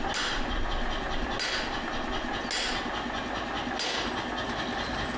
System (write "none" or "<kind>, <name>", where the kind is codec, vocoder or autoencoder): none